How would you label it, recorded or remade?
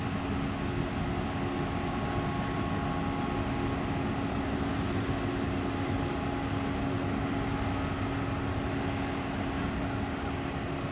recorded